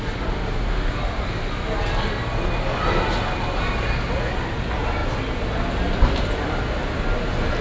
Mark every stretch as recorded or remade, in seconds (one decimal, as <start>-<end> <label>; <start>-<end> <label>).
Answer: 0.0-7.6 recorded